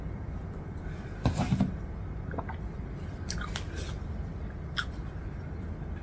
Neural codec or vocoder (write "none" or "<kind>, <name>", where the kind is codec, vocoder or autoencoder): none